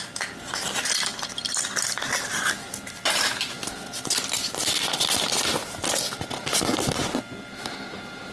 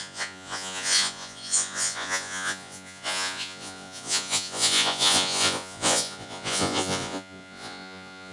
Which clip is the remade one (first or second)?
second